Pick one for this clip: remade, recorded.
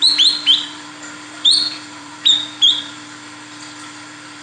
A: remade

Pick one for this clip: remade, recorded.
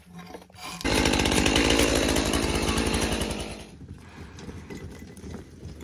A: recorded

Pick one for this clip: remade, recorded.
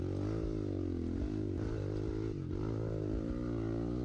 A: recorded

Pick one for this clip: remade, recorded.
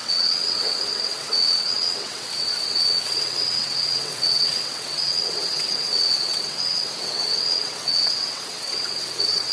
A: remade